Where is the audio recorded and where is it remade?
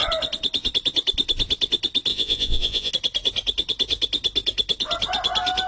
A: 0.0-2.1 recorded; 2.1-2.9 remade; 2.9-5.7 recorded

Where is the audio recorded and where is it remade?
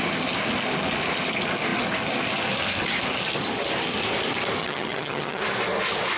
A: 0.0-4.6 recorded; 4.6-5.4 remade; 5.4-6.2 recorded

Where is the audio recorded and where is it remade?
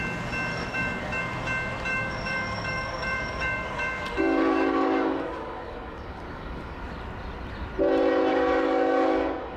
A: 0.0-0.5 recorded; 0.5-1.2 remade; 1.2-1.9 recorded; 1.9-6.8 remade; 6.8-8.3 recorded; 8.3-9.6 remade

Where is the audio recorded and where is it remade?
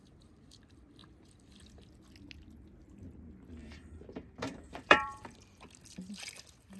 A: 0.0-3.6 recorded; 3.6-5.6 remade; 5.6-6.8 recorded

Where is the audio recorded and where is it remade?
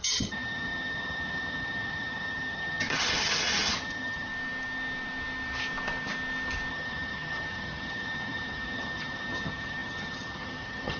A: 0.0-4.3 remade; 4.3-6.7 recorded; 6.7-11.0 remade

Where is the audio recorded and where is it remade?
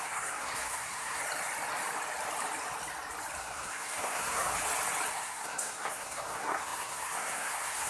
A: 0.0-1.2 remade; 1.2-3.4 recorded; 3.4-4.5 remade; 4.5-5.1 recorded; 5.1-7.9 remade